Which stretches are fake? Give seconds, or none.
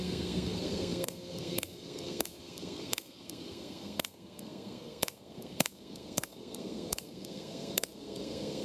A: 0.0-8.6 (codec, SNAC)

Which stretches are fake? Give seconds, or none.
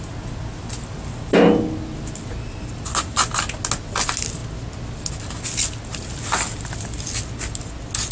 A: none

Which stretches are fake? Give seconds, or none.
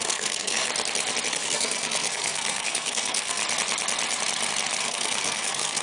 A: 0.0-0.7 (codec, SNAC); 1.3-3.4; 4.8-5.8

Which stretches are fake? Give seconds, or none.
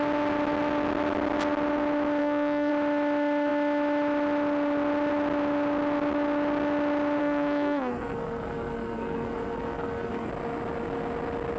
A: 2.2-2.7 (codec, SNAC); 7.2-10.3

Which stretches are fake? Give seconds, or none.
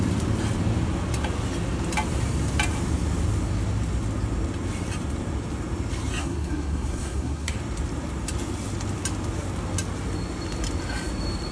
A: 6.2-7.5 (codec, SNAC)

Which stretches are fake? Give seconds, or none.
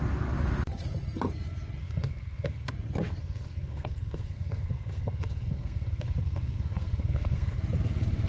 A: 1.8-2.7 (codec, SNAC); 3.2-7.6